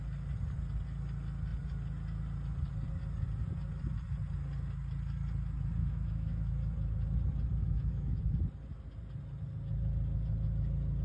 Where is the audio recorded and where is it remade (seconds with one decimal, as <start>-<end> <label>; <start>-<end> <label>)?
0.0-5.8 recorded; 5.8-6.5 remade; 6.5-7.6 recorded; 7.6-8.2 remade; 8.2-11.0 recorded